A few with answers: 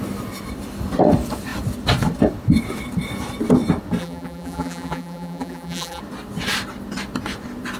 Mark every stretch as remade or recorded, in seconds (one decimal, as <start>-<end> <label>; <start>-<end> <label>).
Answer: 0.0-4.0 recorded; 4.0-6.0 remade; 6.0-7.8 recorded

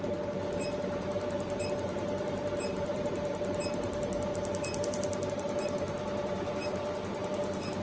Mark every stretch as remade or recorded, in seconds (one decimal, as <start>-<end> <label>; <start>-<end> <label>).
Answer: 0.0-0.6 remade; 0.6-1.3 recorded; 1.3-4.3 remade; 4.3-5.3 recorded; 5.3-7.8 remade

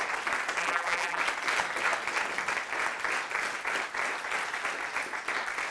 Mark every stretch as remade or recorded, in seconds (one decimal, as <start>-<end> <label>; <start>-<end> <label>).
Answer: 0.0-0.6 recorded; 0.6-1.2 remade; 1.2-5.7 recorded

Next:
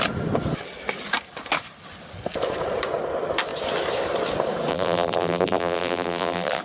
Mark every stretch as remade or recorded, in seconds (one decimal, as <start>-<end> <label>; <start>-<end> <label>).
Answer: 0.0-4.7 recorded; 4.7-6.6 remade

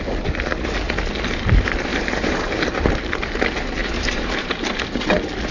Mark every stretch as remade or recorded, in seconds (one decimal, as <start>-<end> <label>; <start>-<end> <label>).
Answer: 0.0-1.9 recorded; 1.9-2.6 remade; 2.6-3.8 recorded; 3.8-4.8 remade; 4.8-5.5 recorded